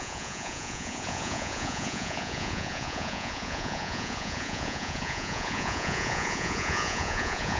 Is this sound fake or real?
fake